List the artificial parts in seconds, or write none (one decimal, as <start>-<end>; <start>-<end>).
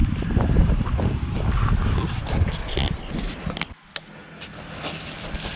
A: none